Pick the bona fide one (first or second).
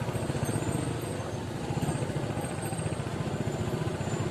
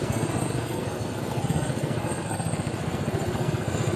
first